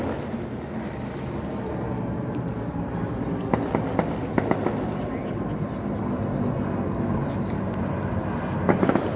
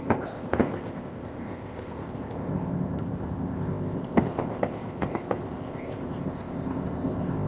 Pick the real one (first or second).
first